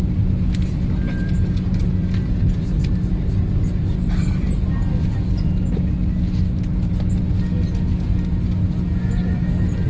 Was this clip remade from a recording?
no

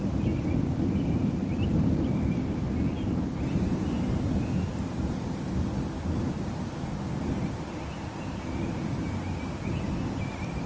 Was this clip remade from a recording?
no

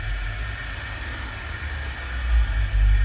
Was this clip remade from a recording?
no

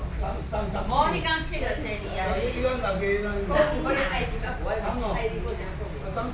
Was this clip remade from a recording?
no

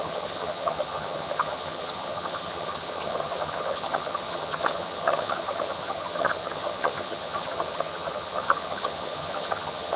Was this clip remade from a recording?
yes